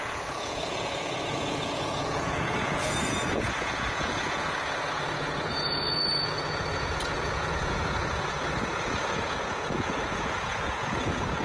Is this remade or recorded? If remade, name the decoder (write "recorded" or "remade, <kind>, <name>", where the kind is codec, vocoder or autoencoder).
remade, vocoder, Vocos